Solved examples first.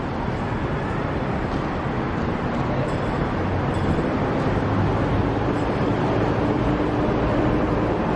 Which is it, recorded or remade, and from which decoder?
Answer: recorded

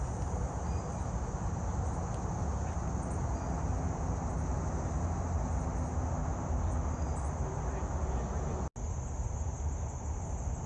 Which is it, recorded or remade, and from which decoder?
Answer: recorded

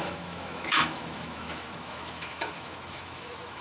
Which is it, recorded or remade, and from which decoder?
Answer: remade, autoencoder, DAC-VAE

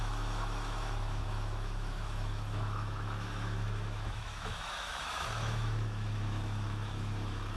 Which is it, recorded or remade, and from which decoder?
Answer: remade, autoencoder, DAC-VAE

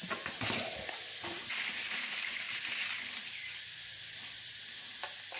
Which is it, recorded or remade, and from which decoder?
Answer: recorded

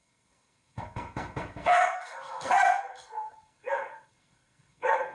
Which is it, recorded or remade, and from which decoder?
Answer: remade, codec, SNAC